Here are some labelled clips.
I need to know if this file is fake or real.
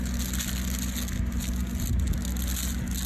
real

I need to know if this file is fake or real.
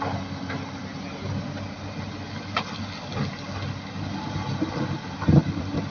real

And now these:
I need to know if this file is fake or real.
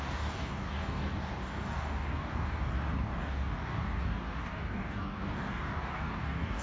fake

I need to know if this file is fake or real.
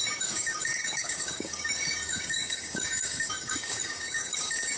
fake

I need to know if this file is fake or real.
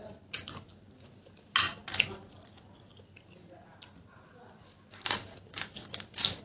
real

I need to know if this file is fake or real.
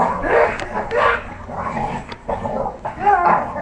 fake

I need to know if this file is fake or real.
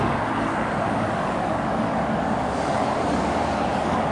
fake